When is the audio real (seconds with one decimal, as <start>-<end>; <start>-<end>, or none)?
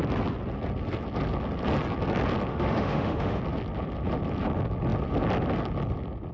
0.0-2.5; 3.4-6.3